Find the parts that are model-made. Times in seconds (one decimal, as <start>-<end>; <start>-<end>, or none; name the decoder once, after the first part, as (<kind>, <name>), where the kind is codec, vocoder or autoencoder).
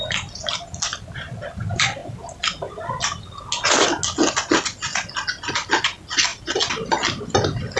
none